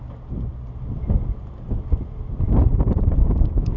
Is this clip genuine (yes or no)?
yes